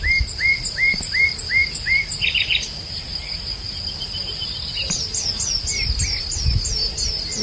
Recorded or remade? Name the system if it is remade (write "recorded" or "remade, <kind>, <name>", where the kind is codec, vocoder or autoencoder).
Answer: recorded